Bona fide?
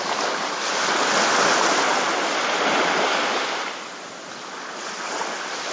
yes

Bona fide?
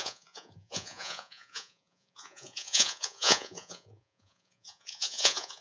no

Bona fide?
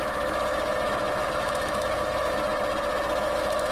no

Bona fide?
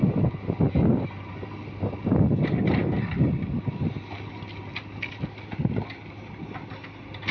yes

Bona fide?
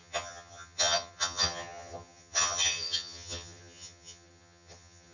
no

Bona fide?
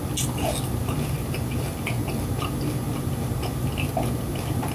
yes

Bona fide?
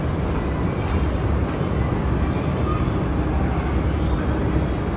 yes